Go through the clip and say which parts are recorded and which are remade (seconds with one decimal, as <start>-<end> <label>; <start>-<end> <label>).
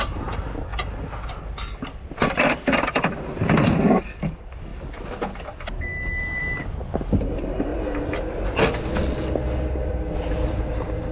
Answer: 0.0-0.7 remade; 0.7-4.1 recorded; 4.1-4.7 remade; 4.7-7.0 recorded; 7.0-11.1 remade